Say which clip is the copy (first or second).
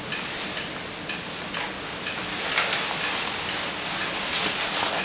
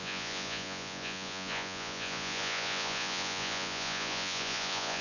second